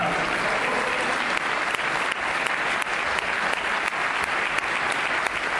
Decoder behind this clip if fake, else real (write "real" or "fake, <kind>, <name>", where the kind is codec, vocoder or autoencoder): real